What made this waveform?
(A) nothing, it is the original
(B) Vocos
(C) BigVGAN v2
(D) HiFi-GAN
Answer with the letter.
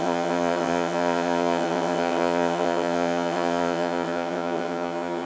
D